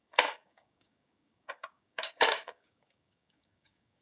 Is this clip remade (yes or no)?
yes